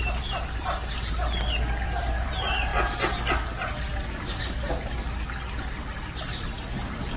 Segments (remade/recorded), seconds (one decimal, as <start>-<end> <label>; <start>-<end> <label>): 0.0-2.7 remade; 2.7-7.2 recorded